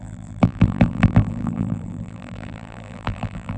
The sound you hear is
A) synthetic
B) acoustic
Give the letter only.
A